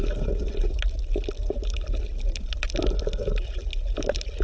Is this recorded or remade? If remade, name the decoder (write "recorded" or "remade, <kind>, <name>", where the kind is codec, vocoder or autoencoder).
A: recorded